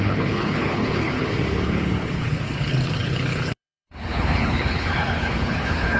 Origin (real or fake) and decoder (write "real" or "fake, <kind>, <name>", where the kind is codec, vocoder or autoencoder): fake, codec, HILCodec